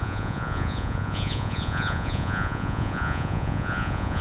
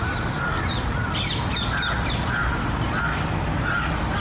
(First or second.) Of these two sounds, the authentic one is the second